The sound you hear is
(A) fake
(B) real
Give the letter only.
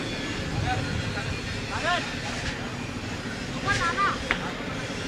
B